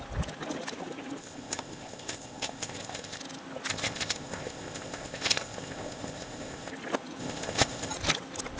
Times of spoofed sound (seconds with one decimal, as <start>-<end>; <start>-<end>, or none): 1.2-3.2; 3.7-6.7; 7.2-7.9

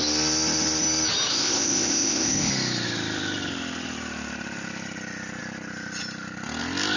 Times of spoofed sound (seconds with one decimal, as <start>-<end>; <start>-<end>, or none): 1.3-2.5

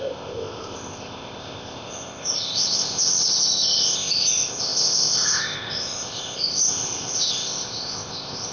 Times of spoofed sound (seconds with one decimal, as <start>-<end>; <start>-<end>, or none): 0.0-8.5

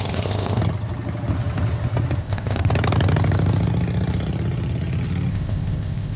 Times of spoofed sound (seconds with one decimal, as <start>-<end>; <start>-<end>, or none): 0.0-0.6; 2.2-2.7; 5.3-6.2